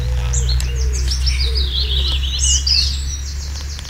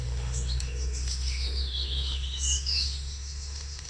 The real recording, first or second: first